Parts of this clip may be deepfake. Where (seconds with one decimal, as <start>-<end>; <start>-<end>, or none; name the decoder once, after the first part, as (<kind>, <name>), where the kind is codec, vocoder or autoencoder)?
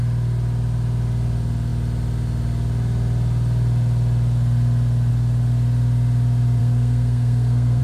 6.6-7.8 (codec, SNAC)